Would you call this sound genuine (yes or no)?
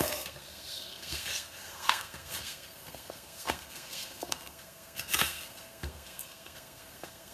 no